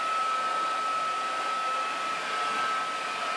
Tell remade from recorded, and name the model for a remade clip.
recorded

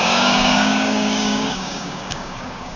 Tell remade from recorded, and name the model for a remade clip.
remade, codec, DAC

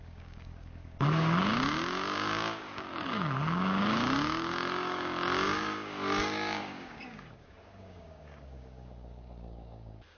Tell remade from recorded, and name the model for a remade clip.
remade, codec, DAC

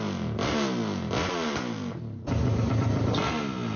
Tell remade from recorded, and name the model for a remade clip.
recorded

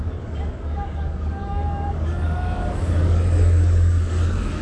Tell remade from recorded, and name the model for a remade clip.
remade, codec, DAC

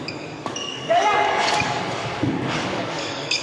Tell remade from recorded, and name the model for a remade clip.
remade, codec, DAC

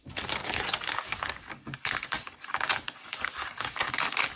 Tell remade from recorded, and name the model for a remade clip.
remade, codec, DAC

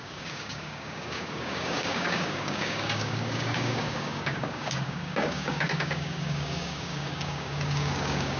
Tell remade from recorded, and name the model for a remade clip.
remade, codec, DAC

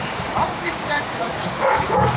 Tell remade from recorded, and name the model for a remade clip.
remade, codec, DAC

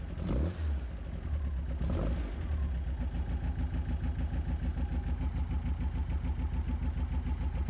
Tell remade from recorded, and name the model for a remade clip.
recorded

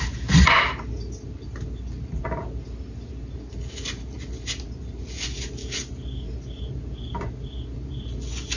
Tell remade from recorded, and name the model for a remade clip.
recorded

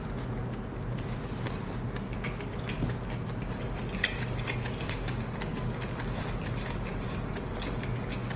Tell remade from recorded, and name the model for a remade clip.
recorded